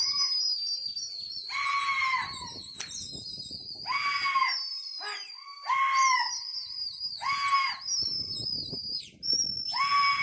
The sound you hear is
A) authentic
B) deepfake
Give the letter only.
A